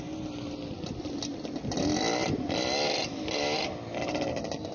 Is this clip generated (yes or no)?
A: no